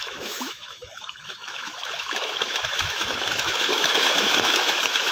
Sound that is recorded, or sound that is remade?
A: remade